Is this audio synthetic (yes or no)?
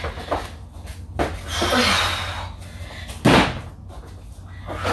no